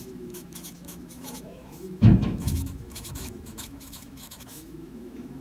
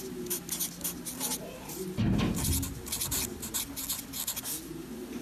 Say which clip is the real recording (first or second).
second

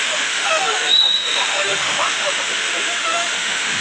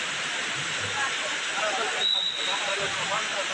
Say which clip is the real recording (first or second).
second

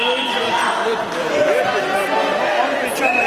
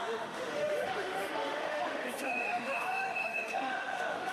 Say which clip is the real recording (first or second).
first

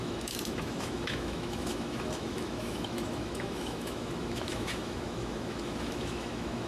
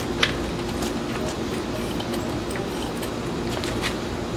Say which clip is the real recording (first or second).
second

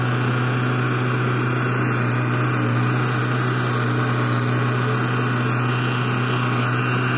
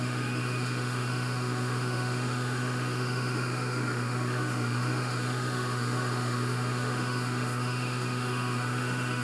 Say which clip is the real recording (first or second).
first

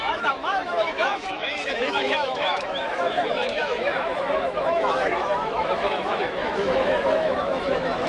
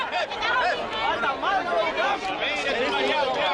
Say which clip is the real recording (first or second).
second